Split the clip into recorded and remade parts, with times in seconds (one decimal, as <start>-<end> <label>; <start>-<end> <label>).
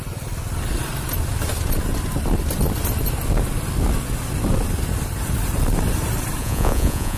0.0-6.4 recorded; 6.4-7.2 remade